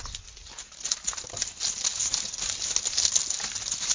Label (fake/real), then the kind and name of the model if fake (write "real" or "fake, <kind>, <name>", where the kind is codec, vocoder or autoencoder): real